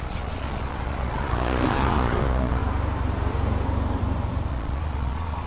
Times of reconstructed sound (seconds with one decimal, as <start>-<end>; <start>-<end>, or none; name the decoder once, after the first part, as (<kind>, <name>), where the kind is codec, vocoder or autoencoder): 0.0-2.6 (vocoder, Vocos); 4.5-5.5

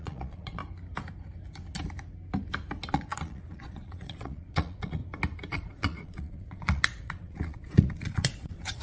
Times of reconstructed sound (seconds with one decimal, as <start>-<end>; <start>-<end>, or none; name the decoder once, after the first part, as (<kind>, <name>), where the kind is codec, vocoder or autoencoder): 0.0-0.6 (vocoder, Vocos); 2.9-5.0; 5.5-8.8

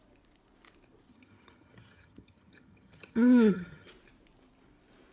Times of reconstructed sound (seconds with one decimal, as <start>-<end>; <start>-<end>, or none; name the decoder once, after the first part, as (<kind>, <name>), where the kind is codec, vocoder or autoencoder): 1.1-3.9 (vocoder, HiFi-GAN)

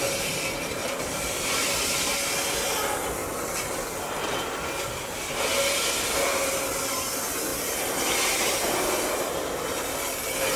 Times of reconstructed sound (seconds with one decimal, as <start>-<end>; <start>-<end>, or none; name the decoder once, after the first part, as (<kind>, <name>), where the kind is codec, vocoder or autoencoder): none

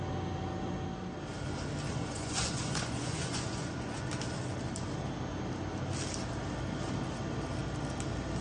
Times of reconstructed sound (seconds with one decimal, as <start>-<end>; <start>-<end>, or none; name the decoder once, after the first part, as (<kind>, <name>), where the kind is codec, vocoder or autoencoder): 1.9-4.1 (vocoder, Vocos)